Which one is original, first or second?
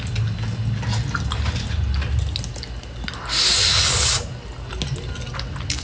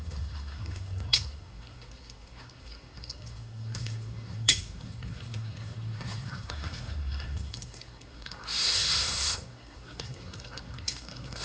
first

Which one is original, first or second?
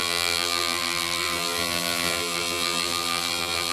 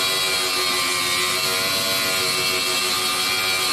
second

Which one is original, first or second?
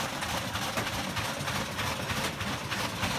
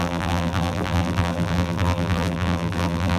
first